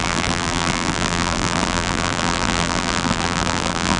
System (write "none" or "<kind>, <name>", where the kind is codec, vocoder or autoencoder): vocoder, BigVGAN v2